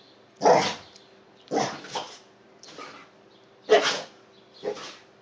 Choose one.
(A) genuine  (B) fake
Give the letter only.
A